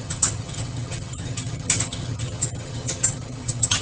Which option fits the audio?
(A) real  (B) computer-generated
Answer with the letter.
B